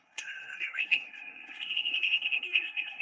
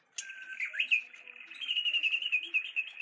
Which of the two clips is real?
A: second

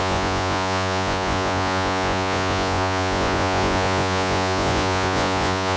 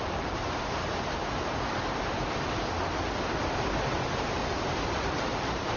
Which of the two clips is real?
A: second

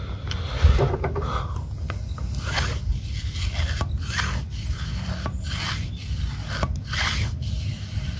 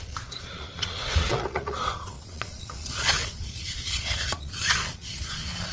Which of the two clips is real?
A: first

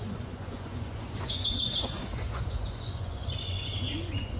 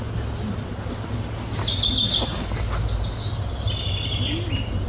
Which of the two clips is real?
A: second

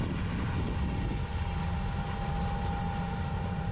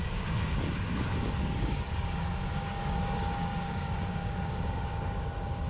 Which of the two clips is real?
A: first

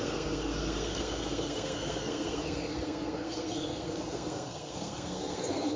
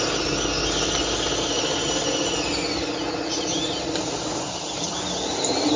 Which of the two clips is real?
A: second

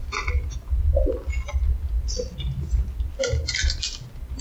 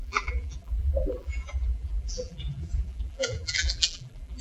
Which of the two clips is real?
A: first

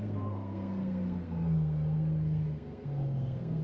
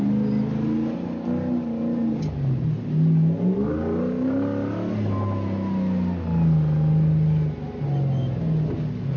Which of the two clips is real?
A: second